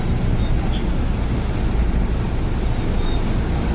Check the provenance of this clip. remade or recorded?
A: recorded